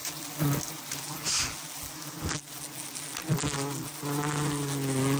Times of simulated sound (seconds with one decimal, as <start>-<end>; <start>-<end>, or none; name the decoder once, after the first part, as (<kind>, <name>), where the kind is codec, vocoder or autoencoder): 0.0-1.0 (vocoder, BigVGAN v2)